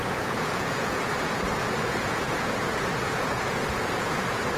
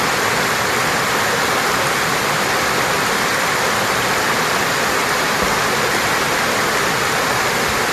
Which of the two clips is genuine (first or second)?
second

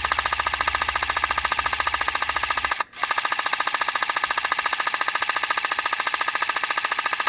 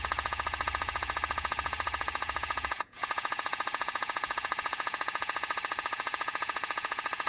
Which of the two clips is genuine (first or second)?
first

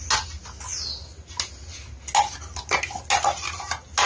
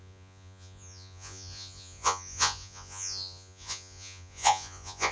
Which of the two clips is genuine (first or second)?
first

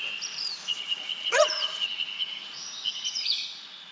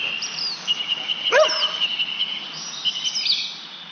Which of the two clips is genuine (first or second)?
second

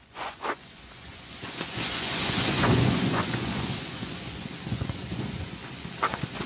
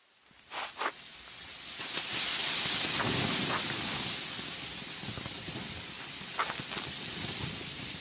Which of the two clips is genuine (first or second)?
second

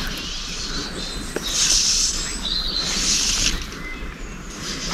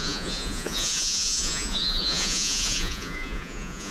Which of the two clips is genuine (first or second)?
first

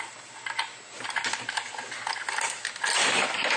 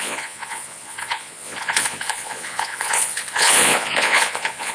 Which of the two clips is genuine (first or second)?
first